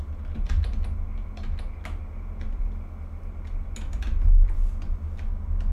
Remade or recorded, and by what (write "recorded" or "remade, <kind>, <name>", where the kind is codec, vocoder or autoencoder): recorded